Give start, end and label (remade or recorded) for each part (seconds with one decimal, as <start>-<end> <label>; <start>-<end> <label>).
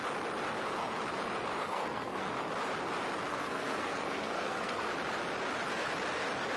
0.0-1.6 recorded; 1.6-2.3 remade; 2.3-3.3 recorded; 3.3-4.9 remade; 4.9-6.6 recorded